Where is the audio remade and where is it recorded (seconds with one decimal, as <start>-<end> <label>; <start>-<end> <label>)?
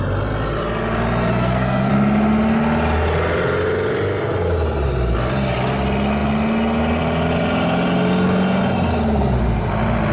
0.0-1.2 recorded; 1.2-1.9 remade; 1.9-10.1 recorded